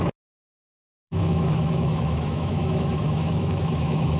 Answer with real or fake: fake